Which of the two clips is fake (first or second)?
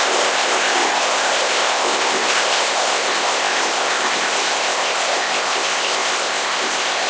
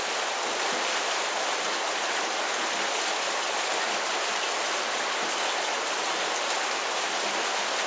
first